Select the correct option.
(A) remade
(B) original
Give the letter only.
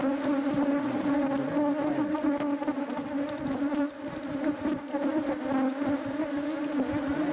B